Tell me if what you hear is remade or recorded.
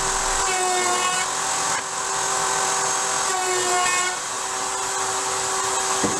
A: recorded